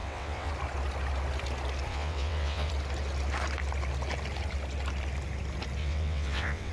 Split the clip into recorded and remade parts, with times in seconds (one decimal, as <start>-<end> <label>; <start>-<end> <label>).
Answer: 0.0-0.5 remade; 0.5-1.9 recorded; 1.9-2.7 remade; 2.7-5.8 recorded; 5.8-6.7 remade